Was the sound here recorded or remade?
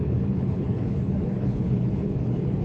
remade